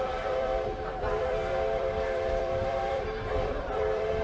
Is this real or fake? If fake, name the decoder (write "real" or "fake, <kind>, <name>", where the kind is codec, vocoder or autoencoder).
fake, vocoder, BigVGAN v2